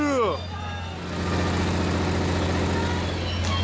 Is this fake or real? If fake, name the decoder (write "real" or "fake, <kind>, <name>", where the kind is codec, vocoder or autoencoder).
real